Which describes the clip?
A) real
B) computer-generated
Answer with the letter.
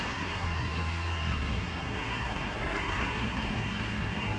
B